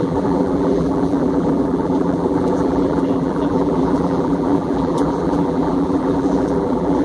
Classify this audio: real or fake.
fake